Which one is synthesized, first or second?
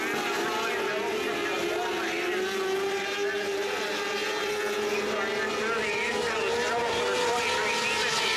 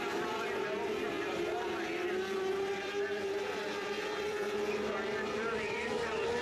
second